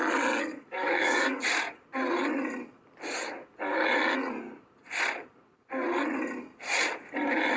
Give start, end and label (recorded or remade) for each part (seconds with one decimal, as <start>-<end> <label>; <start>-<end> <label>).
0.0-0.5 recorded; 0.5-1.4 remade; 1.4-7.6 recorded